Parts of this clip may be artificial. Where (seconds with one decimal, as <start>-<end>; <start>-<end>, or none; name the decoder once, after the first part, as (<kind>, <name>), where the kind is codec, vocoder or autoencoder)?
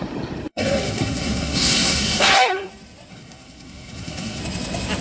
0.5-2.7 (codec, SNAC); 3.1-4.4